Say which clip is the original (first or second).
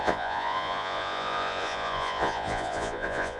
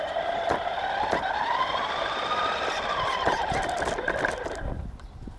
second